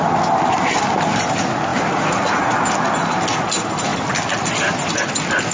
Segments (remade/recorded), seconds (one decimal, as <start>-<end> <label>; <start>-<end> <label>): 0.0-5.5 recorded